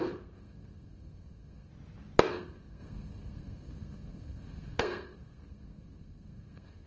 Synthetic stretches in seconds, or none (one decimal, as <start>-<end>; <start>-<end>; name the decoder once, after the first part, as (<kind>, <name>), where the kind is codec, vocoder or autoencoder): 0.0-1.7 (codec, SNAC); 2.3-6.9